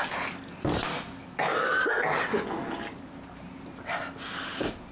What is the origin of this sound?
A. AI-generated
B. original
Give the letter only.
B